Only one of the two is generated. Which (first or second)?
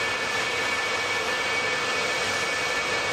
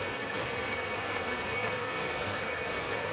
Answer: second